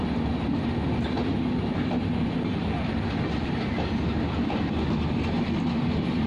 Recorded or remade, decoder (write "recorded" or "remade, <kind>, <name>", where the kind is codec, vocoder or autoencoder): recorded